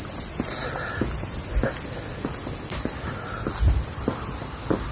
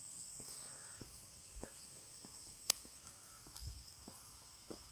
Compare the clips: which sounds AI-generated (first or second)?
second